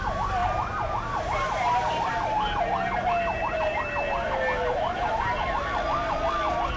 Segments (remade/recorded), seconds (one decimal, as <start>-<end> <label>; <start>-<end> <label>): 0.0-6.8 recorded